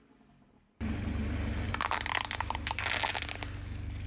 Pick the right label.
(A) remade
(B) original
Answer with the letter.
B